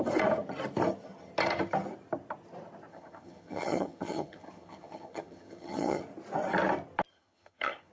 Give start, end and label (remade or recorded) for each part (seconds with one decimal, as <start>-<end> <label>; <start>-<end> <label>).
0.0-2.9 recorded; 2.9-6.0 remade; 6.0-7.1 recorded; 7.1-7.9 remade